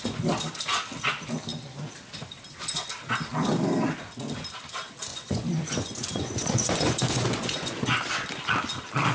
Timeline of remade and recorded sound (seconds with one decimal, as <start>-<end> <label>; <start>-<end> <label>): 0.0-5.1 recorded; 5.1-8.1 remade; 8.1-9.1 recorded